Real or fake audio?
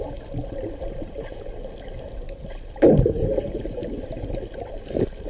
real